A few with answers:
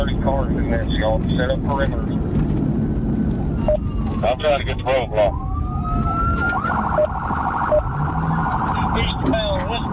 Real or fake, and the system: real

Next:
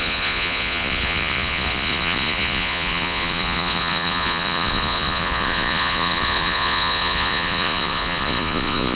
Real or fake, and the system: fake, vocoder, Vocos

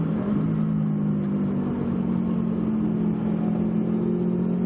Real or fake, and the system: real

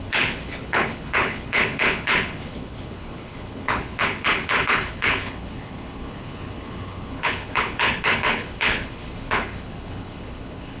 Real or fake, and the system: fake, codec, HILCodec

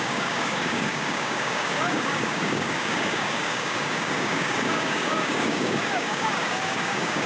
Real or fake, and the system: fake, codec, DAC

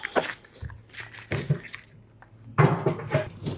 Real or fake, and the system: real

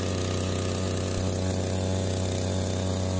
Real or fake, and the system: real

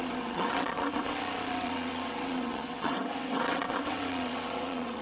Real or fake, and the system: fake, vocoder, WaveNeXt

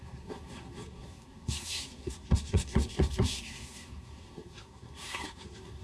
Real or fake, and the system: fake, codec, SNAC